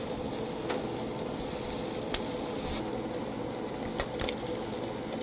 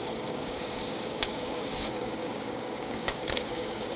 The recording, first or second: first